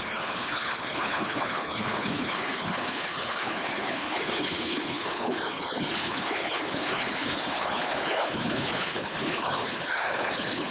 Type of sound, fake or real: fake